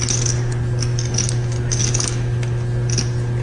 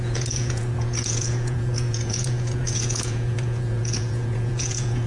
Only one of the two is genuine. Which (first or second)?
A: first